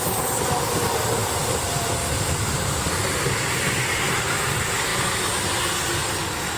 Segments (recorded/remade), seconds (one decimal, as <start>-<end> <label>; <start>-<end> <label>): 0.0-1.2 recorded; 1.2-2.6 remade; 2.6-3.0 recorded; 3.0-4.1 remade; 4.1-6.6 recorded